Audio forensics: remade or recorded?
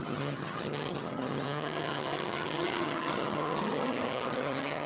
remade